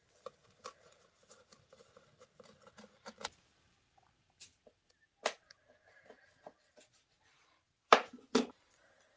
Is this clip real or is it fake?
real